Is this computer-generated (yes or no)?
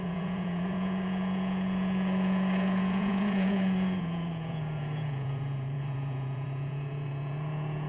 yes